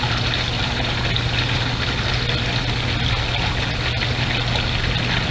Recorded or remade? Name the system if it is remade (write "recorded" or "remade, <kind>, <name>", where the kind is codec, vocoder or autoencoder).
recorded